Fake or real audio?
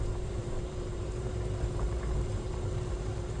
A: fake